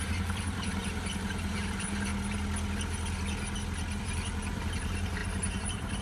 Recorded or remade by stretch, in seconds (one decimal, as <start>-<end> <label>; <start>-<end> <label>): 0.0-2.1 remade; 2.1-4.0 recorded; 4.0-6.0 remade